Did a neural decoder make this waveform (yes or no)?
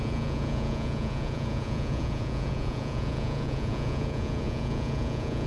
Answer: yes